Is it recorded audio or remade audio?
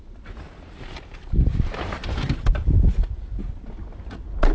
recorded